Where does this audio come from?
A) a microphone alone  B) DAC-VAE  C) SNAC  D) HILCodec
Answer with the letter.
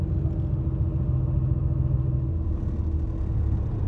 A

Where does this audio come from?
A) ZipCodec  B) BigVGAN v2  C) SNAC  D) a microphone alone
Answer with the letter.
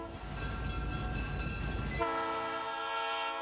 D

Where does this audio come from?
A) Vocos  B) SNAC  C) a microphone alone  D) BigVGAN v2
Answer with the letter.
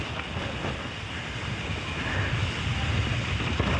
C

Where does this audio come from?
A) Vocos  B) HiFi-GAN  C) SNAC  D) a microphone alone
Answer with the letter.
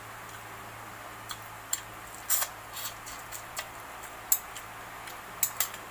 D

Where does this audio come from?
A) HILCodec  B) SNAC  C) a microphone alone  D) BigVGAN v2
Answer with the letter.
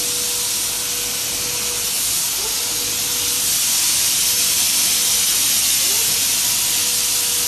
C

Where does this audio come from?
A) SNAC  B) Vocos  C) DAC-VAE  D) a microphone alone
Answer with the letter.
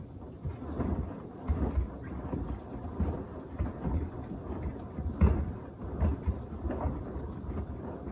D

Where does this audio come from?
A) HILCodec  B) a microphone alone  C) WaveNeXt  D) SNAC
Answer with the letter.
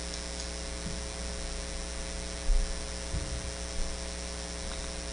B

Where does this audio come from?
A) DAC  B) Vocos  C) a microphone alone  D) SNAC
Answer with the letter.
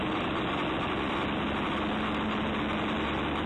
C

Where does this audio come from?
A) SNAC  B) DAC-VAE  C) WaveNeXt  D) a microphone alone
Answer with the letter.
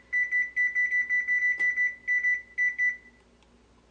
D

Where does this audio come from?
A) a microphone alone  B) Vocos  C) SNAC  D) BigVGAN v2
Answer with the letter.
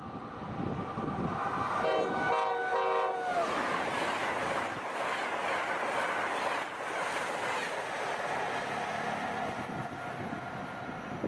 A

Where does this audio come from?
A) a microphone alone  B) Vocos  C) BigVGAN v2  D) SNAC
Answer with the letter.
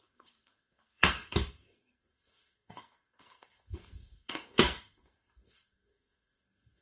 D